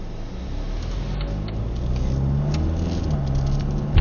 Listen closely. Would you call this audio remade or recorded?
recorded